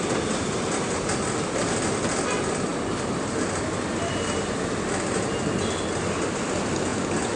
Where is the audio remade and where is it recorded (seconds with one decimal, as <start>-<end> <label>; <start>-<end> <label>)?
0.0-7.4 recorded